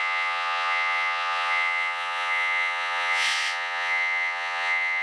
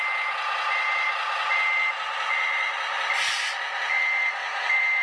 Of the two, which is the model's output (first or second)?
first